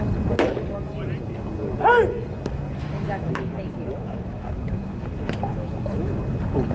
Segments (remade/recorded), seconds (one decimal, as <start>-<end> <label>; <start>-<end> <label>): 0.0-2.8 recorded; 2.8-5.0 remade; 5.0-5.5 recorded; 5.5-6.2 remade; 6.2-6.7 recorded